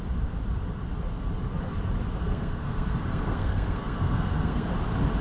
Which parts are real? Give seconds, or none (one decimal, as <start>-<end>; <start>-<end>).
0.0-2.2; 4.7-5.2